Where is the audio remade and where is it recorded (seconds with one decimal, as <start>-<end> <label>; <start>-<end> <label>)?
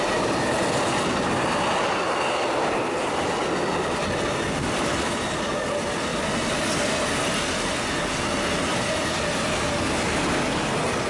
0.0-6.1 recorded; 6.1-7.1 remade; 7.1-11.1 recorded